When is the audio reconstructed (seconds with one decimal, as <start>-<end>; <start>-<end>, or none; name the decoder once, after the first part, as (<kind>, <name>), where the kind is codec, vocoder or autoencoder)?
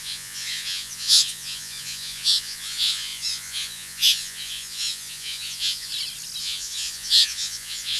0.0-5.9 (vocoder, Vocos); 6.4-8.0